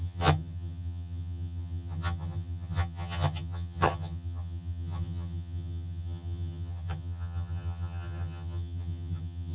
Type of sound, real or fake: fake